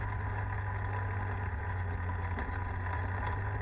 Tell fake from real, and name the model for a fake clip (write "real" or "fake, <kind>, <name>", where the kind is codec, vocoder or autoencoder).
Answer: real